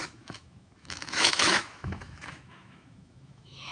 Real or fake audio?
fake